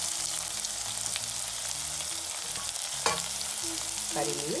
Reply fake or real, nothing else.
real